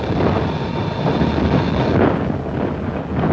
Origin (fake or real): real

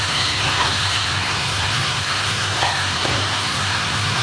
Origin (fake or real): fake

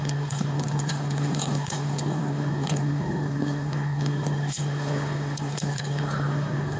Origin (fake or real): fake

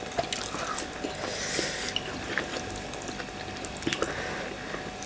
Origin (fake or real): real